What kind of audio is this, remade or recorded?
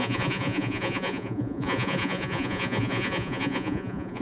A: remade